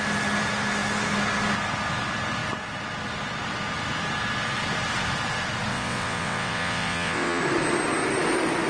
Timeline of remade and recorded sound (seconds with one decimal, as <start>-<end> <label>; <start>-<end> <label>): 0.0-5.7 recorded; 5.7-7.4 remade; 7.4-8.7 recorded